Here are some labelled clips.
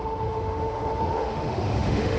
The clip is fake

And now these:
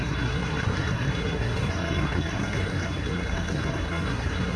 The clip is fake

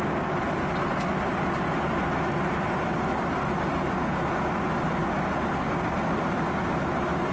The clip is real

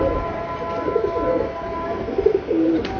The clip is real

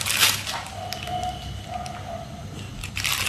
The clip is real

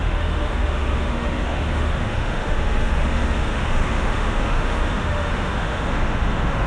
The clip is fake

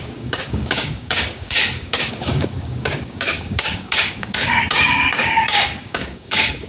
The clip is fake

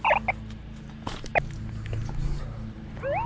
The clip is real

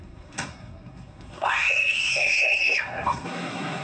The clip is fake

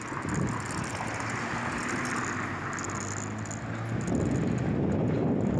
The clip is real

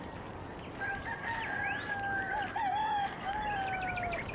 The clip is real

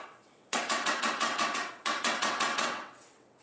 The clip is fake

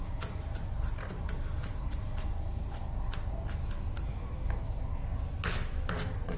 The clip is real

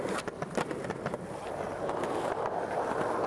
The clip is real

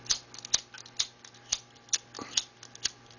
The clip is real